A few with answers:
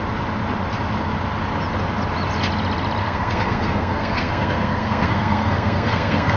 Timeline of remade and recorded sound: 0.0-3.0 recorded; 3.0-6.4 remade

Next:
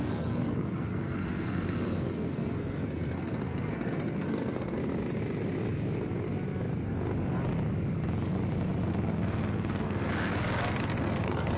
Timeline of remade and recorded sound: 0.0-4.8 remade; 4.8-8.9 recorded; 8.9-10.1 remade; 10.1-11.0 recorded; 11.0-11.6 remade